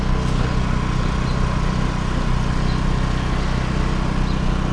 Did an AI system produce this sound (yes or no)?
no